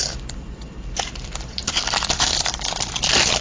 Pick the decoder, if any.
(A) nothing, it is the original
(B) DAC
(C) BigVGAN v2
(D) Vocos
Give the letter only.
C